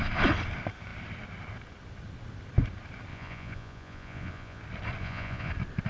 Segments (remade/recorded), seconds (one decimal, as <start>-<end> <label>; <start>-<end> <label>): 0.0-3.1 recorded; 3.1-4.6 remade; 4.6-5.0 recorded; 5.0-5.5 remade; 5.5-5.9 recorded